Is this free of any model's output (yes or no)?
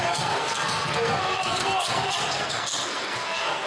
no